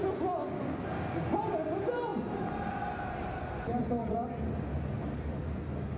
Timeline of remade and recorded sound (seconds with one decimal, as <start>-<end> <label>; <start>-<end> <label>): 0.0-6.0 recorded